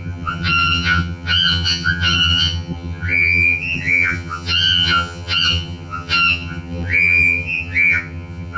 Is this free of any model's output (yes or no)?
no